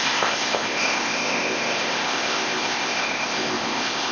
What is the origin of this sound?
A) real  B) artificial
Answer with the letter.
B